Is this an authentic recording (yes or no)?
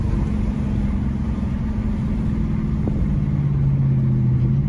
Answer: yes